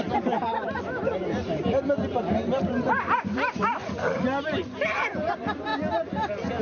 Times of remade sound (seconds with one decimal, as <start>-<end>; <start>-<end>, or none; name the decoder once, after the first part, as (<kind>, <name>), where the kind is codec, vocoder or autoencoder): 0.0-3.8 (vocoder, BigVGAN v2); 5.0-5.7